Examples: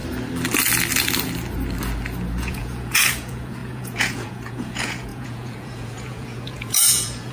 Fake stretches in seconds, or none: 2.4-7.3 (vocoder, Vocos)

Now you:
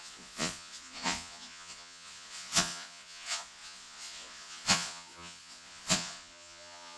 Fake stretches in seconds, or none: 0.0-7.0 (vocoder, Vocos)

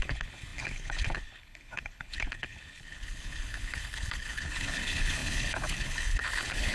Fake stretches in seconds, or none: 0.0-6.7 (codec, HILCodec)